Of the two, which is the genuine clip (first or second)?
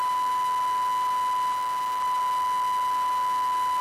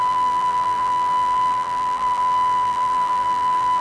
first